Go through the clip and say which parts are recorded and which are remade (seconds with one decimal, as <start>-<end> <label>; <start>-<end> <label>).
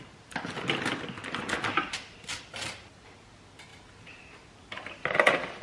0.0-5.6 recorded